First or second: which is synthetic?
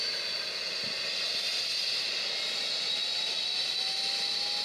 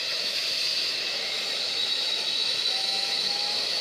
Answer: second